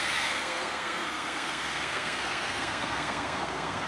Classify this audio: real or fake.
fake